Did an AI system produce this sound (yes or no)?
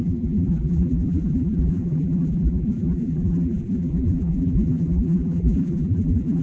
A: yes